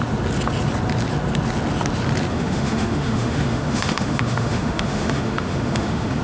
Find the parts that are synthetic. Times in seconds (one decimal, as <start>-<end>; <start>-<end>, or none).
2.3-6.2